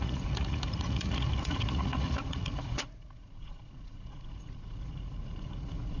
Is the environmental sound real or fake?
fake